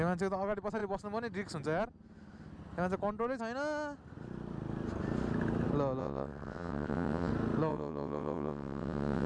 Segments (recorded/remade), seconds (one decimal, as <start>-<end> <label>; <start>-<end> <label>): 0.0-6.0 recorded; 6.0-7.3 remade; 7.3-7.7 recorded; 7.7-9.3 remade